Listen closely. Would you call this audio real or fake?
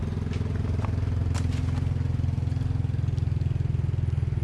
real